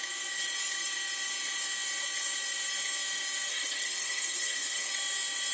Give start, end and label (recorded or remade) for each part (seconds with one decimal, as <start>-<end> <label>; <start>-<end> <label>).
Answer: 0.0-3.5 recorded; 3.5-4.9 remade; 4.9-5.5 recorded